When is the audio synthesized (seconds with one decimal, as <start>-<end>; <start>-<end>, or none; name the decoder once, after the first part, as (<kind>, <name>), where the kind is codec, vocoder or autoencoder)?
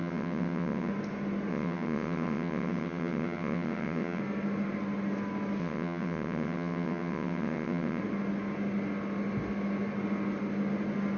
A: 0.0-0.9 (vocoder, WaveNeXt); 1.5-4.2; 5.6-8.0